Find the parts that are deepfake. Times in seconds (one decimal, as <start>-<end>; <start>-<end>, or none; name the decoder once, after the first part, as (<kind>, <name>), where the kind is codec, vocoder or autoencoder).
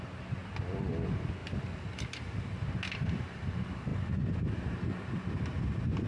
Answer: 0.4-0.9 (vocoder, BigVGAN v2); 3.9-5.1